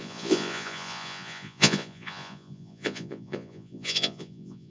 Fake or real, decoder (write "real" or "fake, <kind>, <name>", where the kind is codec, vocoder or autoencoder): fake, vocoder, Vocos